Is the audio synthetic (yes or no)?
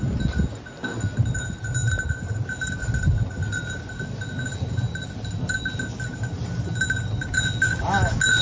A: no